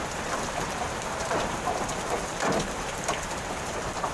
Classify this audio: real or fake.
fake